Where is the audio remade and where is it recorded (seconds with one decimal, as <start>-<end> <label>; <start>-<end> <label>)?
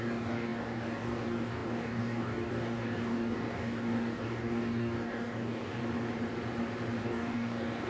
0.0-5.8 remade; 5.8-7.0 recorded; 7.0-7.9 remade